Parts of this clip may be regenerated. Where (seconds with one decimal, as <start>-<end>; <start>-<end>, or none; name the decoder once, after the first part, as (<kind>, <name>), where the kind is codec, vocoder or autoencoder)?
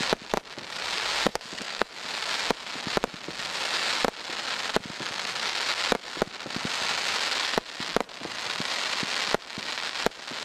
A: 1.3-1.9 (codec, SNAC)